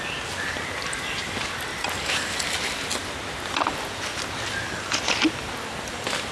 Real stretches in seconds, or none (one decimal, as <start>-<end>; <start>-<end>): 0.0-6.3